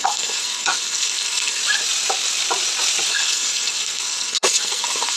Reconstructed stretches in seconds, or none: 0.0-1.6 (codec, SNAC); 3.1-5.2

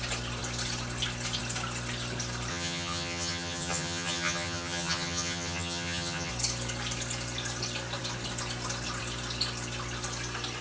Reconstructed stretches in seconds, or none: 2.5-6.3 (vocoder, HiFi-GAN)

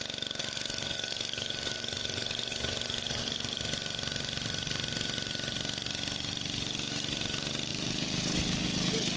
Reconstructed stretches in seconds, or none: 0.4-3.6 (codec, DAC); 7.7-9.2